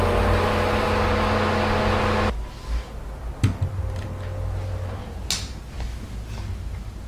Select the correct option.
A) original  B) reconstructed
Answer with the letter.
A